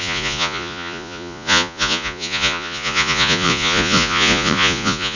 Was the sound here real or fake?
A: fake